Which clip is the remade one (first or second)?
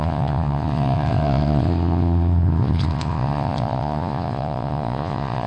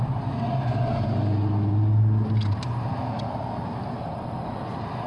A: first